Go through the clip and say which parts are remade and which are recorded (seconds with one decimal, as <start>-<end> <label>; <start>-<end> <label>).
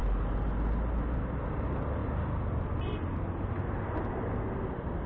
0.0-5.1 recorded